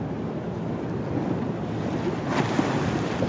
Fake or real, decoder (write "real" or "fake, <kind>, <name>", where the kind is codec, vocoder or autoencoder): real